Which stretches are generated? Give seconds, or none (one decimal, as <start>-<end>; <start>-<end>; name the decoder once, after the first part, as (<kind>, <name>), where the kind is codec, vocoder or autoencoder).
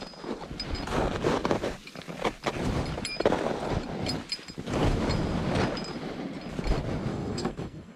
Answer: 7.1-8.0 (codec, SNAC)